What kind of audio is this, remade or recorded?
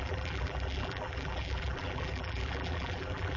remade